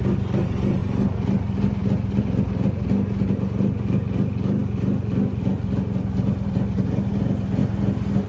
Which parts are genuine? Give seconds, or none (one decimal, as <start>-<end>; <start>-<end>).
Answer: 0.0-8.3

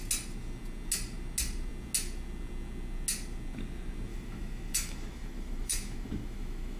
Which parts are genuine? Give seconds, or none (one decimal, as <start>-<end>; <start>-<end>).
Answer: 0.0-4.1

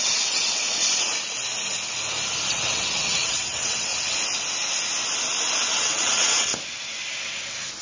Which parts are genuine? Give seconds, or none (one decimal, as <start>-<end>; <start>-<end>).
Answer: 1.1-2.5; 3.9-5.7; 6.5-7.8

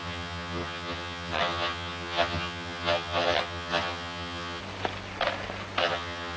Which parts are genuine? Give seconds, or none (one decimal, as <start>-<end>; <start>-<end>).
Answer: 4.6-5.8

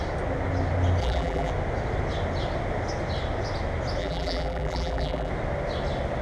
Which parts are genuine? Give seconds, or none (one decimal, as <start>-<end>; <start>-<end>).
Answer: 0.0-1.0; 1.5-4.0; 5.3-6.2

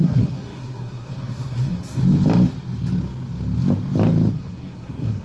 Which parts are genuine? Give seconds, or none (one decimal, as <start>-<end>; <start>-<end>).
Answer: 2.0-4.3

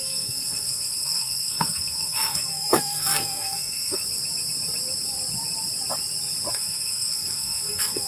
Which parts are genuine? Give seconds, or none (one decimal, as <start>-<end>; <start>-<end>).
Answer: 4.0-6.5